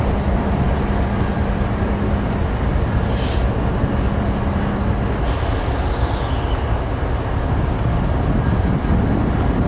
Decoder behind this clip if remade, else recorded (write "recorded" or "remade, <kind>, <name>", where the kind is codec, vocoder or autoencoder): recorded